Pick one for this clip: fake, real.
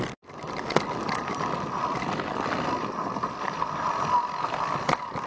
real